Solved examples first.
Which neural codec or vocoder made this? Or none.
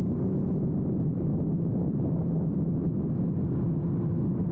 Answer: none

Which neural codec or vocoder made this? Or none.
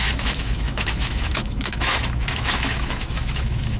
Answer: autoencoder, DAC-VAE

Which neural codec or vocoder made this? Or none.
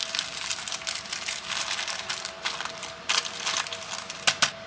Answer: none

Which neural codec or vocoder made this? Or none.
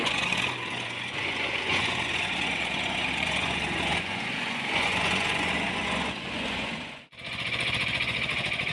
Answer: vocoder, Vocos